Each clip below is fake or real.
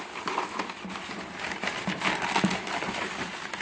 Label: real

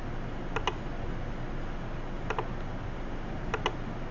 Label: real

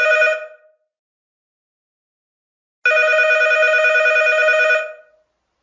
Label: real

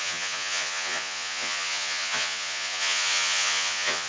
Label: fake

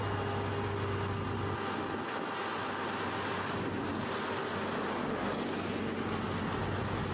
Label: real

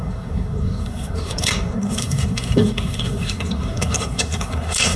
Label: fake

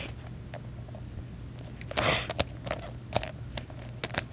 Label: real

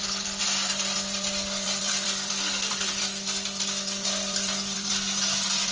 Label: real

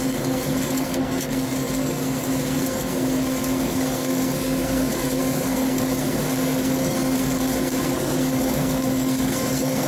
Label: fake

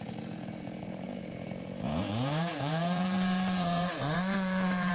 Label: fake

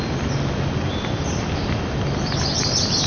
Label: real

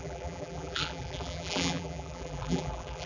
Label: fake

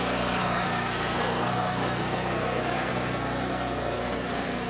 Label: fake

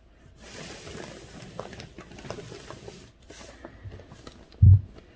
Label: real